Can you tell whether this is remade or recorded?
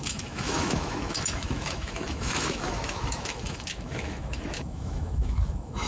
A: remade